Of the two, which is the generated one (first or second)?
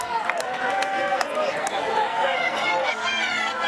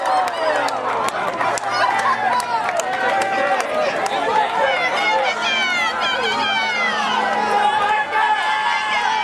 first